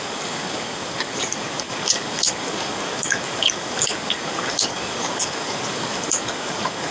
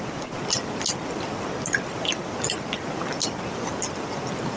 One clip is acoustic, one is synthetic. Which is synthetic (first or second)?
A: first